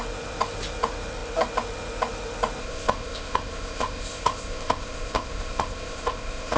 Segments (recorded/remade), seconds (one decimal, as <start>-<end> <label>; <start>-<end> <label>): 0.0-2.6 recorded; 2.6-6.6 remade